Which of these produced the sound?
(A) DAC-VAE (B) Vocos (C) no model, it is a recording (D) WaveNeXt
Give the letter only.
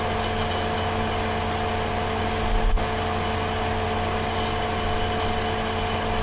C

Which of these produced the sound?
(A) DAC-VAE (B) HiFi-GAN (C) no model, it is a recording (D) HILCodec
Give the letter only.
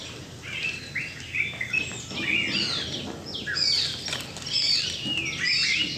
C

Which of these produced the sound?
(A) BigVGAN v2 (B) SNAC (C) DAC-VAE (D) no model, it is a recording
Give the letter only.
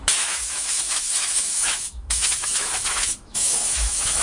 C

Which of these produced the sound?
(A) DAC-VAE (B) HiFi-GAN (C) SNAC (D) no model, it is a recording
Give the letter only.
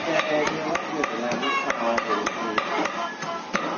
D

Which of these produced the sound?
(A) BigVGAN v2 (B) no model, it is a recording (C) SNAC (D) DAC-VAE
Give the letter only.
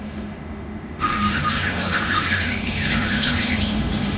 D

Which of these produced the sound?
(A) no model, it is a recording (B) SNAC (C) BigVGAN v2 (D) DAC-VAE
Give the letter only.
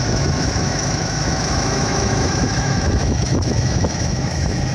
D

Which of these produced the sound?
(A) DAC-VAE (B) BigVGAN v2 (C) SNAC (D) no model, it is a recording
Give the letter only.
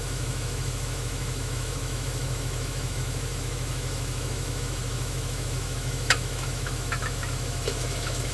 A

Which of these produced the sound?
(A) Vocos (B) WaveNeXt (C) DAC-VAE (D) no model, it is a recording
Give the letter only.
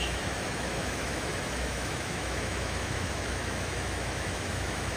C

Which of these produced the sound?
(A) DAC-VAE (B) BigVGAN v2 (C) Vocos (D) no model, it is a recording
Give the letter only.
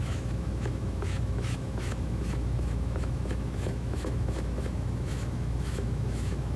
A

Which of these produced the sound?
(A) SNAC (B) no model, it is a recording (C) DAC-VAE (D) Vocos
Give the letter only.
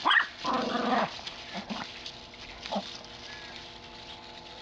B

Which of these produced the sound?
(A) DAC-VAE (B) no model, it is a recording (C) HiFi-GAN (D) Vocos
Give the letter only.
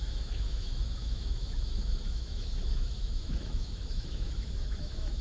A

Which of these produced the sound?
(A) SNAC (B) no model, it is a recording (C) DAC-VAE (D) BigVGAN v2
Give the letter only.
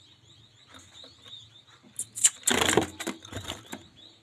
B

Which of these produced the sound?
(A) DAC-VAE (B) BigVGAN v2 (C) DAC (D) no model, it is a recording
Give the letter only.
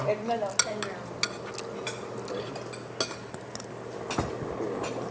D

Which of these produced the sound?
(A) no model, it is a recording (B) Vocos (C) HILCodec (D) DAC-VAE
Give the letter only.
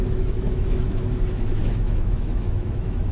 D